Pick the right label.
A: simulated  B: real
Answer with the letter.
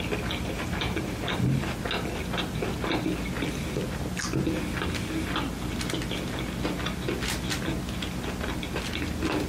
B